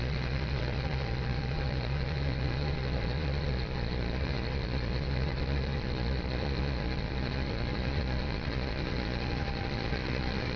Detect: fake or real fake